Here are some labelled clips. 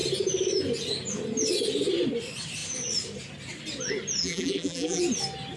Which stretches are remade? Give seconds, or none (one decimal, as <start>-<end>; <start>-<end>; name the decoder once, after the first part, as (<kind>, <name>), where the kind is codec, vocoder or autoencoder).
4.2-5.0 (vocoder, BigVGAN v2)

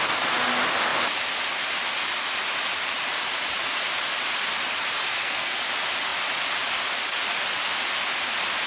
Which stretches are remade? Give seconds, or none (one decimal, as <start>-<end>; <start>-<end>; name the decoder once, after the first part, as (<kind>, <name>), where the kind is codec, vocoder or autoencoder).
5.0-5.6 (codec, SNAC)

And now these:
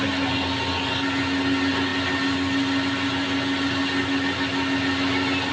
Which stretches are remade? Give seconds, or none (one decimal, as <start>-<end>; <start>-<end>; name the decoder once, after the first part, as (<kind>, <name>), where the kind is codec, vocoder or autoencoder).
none

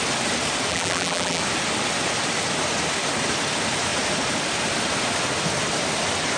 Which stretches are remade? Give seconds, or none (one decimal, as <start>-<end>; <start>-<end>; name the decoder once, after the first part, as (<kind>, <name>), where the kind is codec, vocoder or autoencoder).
0.7-1.4 (vocoder, BigVGAN v2)